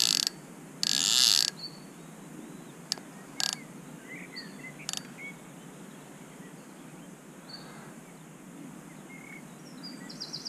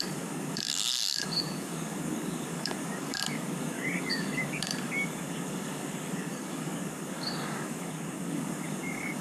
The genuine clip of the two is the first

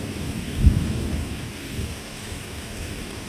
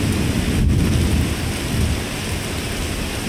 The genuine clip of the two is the second